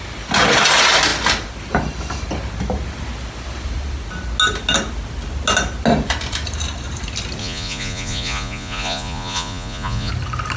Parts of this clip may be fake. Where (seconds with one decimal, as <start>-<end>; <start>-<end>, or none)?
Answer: 7.4-10.1